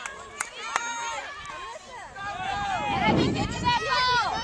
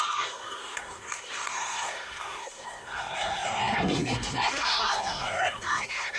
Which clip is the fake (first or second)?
second